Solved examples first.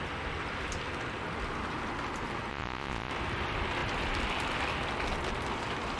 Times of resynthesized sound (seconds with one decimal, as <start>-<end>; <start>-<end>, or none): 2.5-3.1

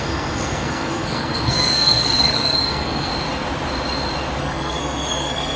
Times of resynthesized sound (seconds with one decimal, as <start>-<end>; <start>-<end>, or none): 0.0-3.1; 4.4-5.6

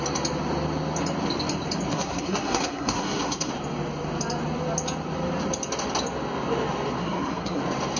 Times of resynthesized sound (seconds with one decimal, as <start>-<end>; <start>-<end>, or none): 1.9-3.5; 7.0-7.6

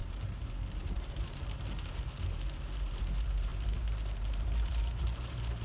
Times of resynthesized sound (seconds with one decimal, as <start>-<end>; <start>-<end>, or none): 0.0-5.6

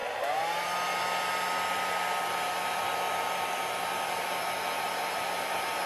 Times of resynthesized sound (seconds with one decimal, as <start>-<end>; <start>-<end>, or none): none

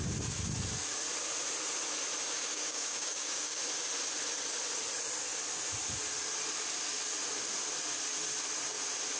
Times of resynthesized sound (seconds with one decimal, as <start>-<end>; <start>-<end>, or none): 2.5-3.6

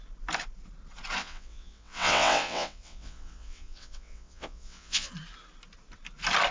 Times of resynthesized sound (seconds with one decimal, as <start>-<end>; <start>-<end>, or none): 1.2-5.1

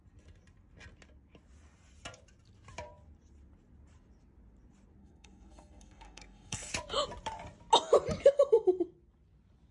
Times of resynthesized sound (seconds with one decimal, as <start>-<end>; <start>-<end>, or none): 5.0-6.7